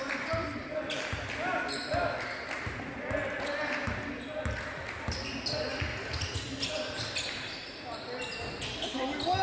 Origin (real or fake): real